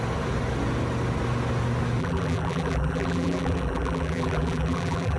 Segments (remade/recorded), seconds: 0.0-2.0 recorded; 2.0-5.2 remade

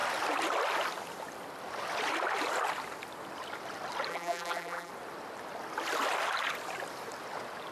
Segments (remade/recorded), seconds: 0.0-4.1 recorded; 4.1-4.9 remade; 4.9-7.7 recorded

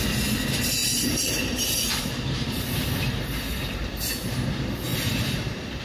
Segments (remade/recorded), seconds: 0.0-0.8 recorded; 0.8-4.1 remade; 4.1-4.9 recorded; 4.9-5.8 remade

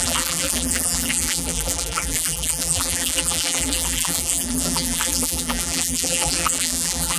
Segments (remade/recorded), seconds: 0.0-7.2 remade